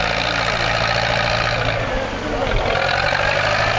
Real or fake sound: real